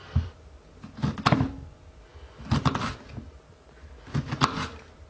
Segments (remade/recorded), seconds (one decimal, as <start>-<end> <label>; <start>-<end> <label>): 0.0-5.1 recorded